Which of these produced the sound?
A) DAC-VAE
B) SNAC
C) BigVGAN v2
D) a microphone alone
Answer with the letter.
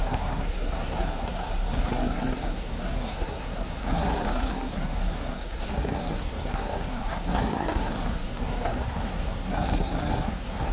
B